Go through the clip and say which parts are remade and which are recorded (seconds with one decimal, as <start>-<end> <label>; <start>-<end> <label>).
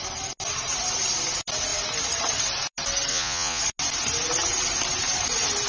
0.0-3.1 recorded; 3.1-3.6 remade; 3.6-5.7 recorded